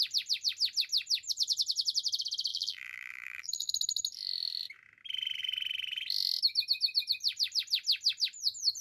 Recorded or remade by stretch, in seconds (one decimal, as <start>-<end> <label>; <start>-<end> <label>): 0.0-2.5 recorded; 2.5-3.7 remade; 3.7-8.8 recorded